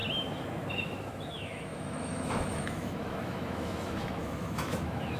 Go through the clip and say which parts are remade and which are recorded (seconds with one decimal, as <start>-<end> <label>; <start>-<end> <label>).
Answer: 0.0-0.7 recorded; 0.7-5.2 remade